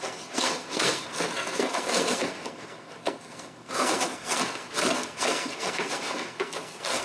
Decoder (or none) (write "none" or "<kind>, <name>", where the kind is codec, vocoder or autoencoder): codec, SNAC